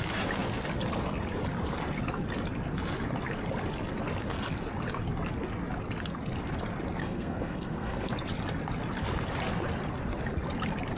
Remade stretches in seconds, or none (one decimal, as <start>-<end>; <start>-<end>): 7.0-8.1

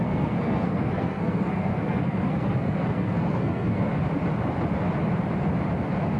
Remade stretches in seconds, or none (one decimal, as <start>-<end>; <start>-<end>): 0.0-3.9

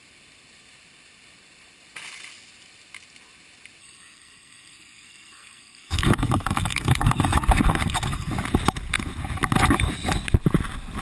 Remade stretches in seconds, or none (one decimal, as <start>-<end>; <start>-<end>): 3.8-8.3